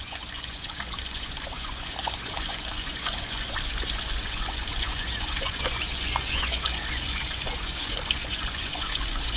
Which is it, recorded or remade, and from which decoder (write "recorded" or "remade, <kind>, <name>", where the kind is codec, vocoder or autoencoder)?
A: remade, vocoder, Vocos